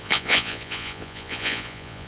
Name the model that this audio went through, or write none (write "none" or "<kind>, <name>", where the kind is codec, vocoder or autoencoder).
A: vocoder, Vocos